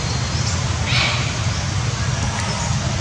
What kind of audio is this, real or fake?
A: real